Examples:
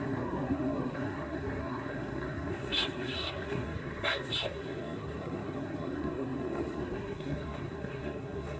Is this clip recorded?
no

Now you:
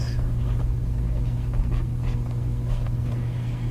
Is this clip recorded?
no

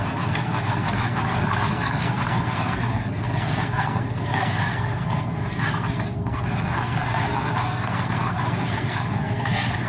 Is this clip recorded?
no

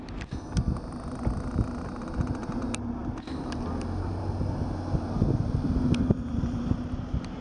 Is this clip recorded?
yes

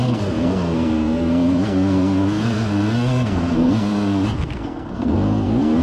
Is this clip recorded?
no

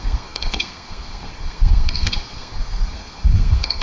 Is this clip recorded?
no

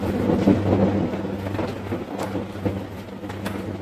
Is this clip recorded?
yes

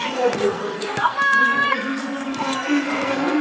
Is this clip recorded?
no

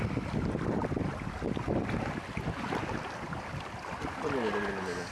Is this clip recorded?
yes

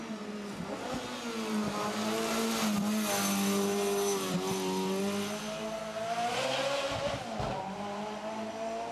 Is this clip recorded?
yes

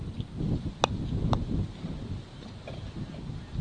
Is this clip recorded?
yes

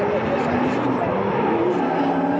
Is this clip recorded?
yes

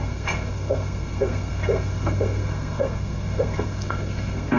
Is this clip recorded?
no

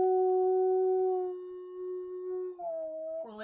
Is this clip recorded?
yes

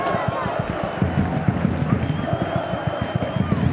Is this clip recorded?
yes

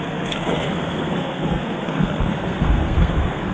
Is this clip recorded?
no